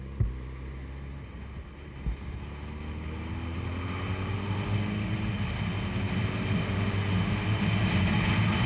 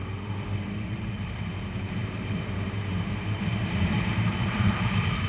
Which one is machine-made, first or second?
second